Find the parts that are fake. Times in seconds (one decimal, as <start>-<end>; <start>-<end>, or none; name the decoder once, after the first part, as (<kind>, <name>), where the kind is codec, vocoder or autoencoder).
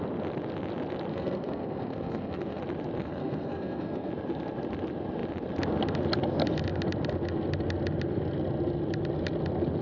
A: 1.1-2.6 (codec, SNAC); 3.0-4.1